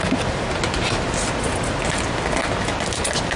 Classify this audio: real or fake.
real